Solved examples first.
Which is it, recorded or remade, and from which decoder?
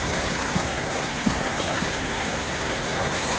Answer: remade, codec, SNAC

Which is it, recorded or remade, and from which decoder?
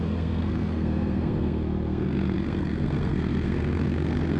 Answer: remade, codec, SNAC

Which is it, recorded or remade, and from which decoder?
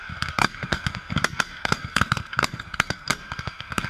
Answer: remade, codec, SNAC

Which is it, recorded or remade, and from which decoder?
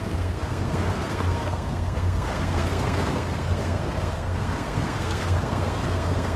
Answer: remade, codec, SNAC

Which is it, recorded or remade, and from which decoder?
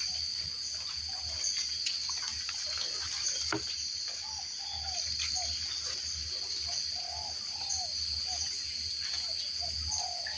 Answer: recorded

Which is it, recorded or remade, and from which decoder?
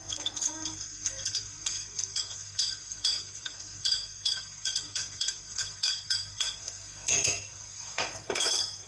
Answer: remade, codec, SNAC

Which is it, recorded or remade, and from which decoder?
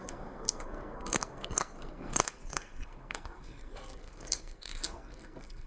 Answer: remade, codec, SNAC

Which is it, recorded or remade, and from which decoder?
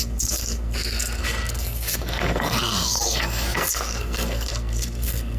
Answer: remade, codec, SNAC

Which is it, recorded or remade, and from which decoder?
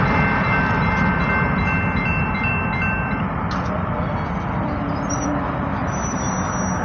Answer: recorded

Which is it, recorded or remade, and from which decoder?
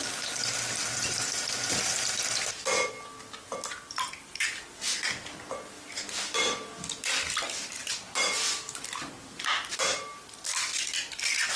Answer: recorded